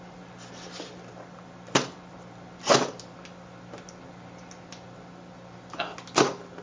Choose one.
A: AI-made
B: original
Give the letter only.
B